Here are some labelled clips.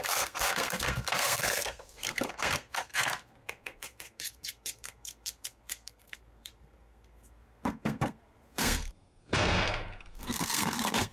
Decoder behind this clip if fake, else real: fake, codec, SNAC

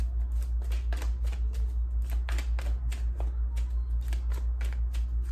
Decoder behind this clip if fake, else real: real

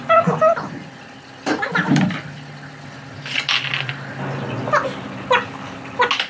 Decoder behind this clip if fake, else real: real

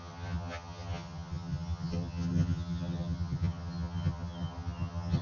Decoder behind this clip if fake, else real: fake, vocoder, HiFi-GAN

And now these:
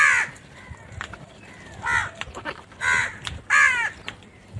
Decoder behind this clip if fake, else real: real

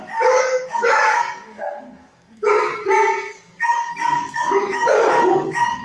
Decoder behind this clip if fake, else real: fake, codec, DAC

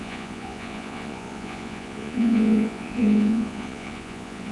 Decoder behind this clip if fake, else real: fake, vocoder, Vocos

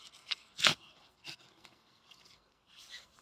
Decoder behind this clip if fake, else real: fake, codec, SNAC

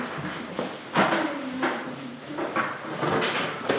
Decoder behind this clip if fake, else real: real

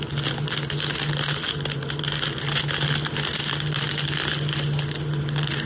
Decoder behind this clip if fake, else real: real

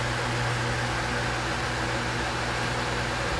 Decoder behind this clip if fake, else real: real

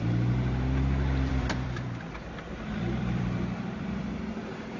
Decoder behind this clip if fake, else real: fake, vocoder, BigVGAN v2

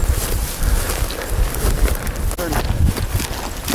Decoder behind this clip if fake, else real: real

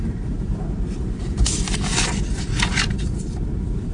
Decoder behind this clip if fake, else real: fake, vocoder, BigVGAN v2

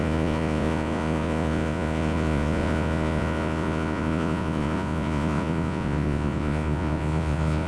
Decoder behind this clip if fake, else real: fake, vocoder, Vocos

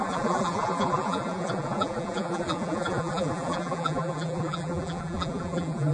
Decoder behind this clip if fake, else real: fake, vocoder, BigVGAN v2